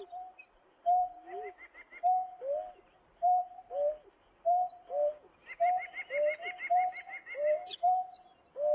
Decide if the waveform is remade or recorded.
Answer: recorded